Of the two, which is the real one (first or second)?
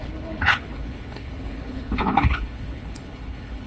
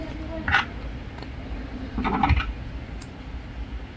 second